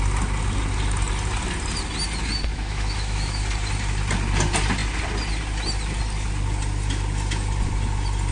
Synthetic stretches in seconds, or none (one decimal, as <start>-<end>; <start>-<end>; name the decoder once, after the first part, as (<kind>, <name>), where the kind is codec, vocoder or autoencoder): 2.5-3.4 (autoencoder, DAC-VAE)